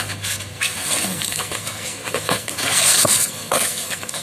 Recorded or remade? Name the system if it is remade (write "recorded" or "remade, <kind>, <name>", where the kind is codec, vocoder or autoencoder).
remade, codec, SNAC